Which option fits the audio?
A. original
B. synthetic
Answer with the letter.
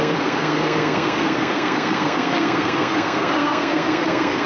B